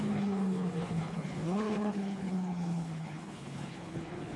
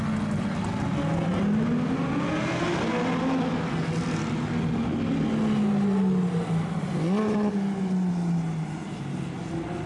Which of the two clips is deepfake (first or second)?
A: first